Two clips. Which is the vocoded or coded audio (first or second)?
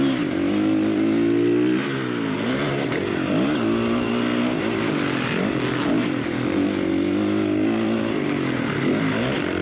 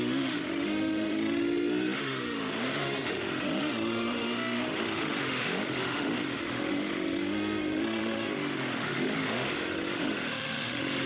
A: second